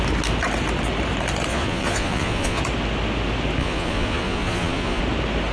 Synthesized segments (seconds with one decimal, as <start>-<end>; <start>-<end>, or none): 1.5-2.6; 3.6-5.0